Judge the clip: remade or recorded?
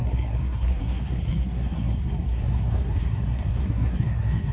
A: remade